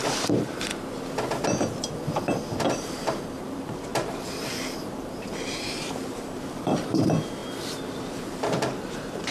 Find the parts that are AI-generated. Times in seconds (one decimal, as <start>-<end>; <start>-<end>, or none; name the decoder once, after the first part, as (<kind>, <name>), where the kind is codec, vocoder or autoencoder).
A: 0.0-0.7 (vocoder, BigVGAN v2); 2.7-9.3